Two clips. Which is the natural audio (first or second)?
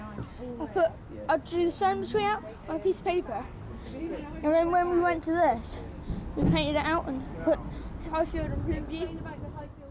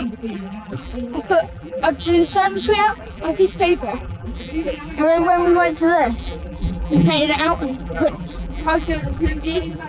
first